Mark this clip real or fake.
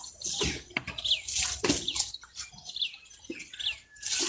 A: real